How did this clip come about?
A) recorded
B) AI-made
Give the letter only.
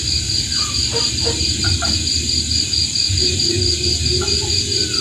A